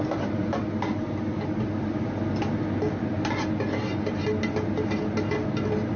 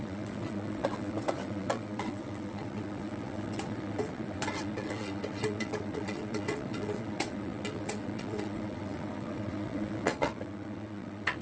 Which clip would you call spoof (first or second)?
second